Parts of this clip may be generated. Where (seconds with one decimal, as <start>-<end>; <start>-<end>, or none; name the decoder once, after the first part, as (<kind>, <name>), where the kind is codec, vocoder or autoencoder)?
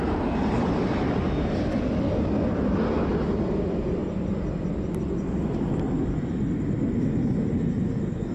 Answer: none